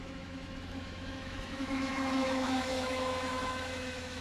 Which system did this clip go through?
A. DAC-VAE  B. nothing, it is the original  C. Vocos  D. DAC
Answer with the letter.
A